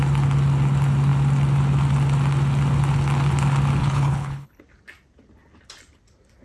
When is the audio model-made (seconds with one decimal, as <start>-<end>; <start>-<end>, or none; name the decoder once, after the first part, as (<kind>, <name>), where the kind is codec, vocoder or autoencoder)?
3.8-4.6 (codec, HILCodec)